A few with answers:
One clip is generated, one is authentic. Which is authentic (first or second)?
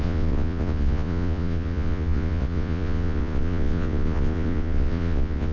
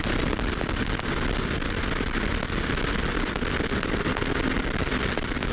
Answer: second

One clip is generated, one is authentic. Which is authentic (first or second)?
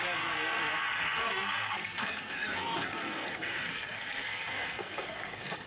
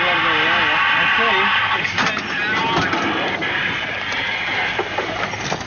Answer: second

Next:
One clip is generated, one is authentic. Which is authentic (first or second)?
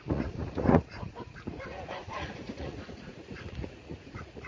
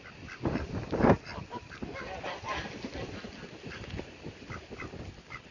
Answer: second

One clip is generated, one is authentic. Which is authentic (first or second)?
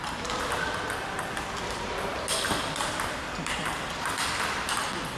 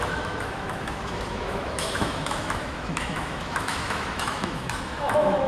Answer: first